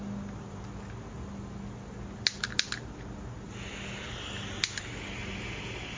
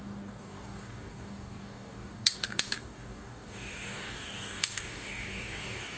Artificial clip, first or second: second